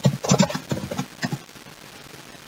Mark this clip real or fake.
real